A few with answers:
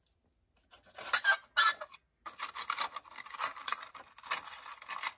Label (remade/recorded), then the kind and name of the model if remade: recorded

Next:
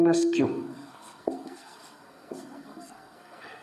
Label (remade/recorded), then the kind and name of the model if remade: remade, codec, SNAC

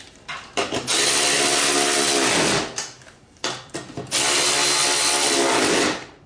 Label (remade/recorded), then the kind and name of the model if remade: recorded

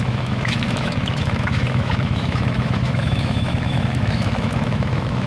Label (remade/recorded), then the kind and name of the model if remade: remade, autoencoder, DAC-VAE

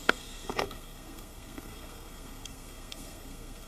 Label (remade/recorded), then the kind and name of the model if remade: remade, codec, SNAC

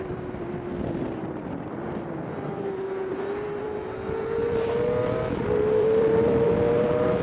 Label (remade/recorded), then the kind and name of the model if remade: remade, vocoder, BigVGAN v2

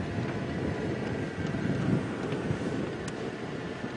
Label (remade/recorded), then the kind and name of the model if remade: recorded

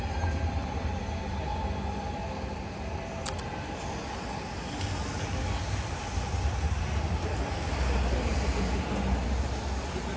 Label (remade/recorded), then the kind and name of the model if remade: recorded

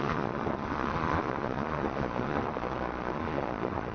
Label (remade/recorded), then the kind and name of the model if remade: remade, vocoder, Vocos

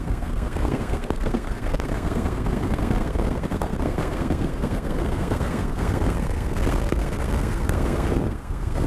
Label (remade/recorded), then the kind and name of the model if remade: remade, codec, SNAC